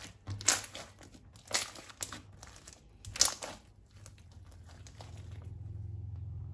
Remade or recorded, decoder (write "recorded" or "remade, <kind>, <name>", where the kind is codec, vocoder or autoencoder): recorded